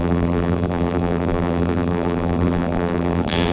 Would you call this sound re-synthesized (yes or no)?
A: yes